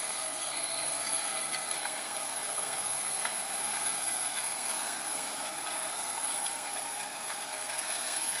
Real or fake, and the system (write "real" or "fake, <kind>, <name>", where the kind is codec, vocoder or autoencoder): fake, codec, SNAC